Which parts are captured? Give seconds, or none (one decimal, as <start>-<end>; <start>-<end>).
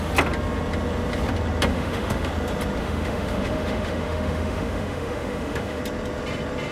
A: 0.0-1.7; 2.3-2.8; 5.8-6.7